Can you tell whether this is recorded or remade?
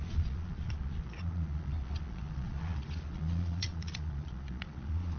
remade